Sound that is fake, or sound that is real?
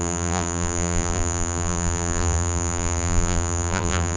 fake